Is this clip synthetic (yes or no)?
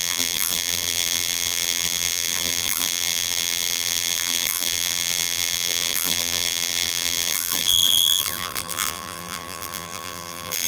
yes